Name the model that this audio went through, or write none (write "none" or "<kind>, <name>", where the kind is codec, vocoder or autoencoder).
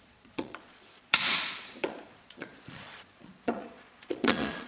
vocoder, Vocos